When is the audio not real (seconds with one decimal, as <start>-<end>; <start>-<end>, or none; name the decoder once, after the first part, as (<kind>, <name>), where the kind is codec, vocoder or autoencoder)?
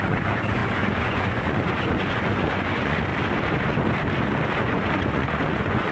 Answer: 0.0-3.1 (vocoder, Vocos); 4.6-5.9